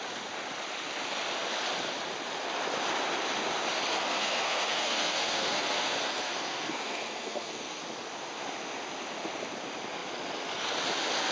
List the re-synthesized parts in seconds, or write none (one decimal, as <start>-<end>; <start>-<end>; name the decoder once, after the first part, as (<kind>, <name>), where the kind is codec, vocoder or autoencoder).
3.9-7.8 (codec, SNAC)